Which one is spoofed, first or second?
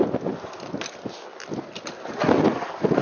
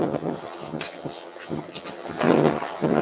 second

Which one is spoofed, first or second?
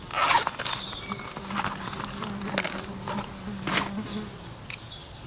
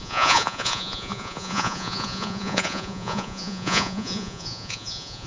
second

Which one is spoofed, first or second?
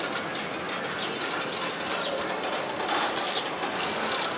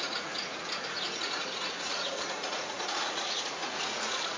second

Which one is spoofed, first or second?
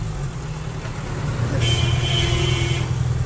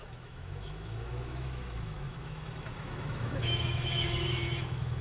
second